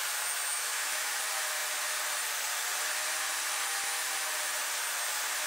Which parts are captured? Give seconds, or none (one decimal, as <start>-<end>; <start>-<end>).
0.0-0.5; 1.1-5.5